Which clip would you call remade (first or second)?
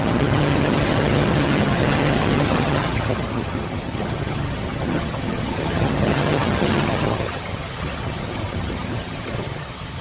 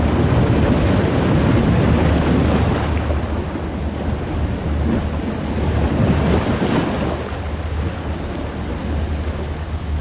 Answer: first